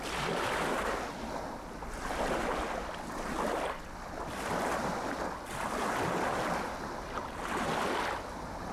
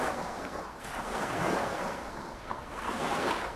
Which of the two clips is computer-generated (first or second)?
second